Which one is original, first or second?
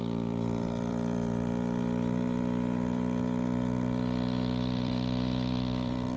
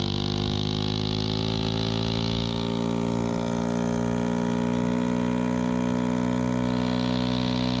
second